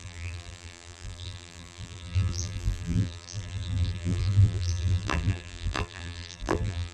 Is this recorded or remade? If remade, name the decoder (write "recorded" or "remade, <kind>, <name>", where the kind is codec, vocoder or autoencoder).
remade, vocoder, BigVGAN v2